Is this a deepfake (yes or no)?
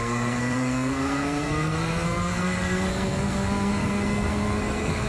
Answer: yes